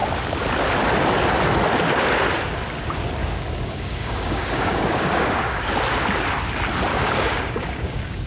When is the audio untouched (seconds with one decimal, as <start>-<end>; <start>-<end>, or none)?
0.0-3.2; 5.7-6.9